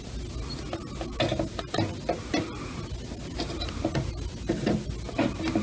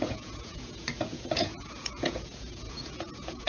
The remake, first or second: second